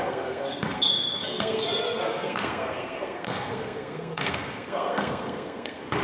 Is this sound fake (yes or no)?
yes